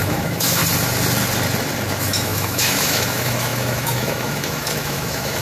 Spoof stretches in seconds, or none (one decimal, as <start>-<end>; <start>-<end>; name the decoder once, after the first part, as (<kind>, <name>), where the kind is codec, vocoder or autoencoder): 0.0-0.6 (autoencoder, DAC-VAE); 1.9-5.4